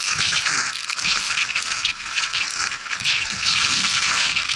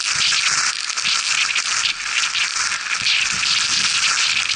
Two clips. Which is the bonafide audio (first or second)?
second